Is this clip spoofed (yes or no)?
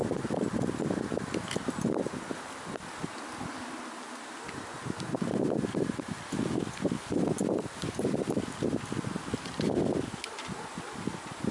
no